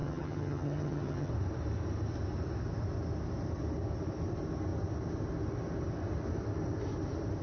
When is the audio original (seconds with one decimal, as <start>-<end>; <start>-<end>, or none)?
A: 1.3-7.4